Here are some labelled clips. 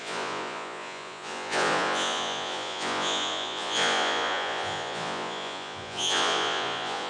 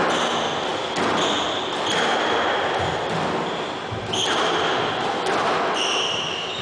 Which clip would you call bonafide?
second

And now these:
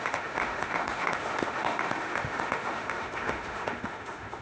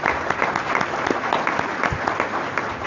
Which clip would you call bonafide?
second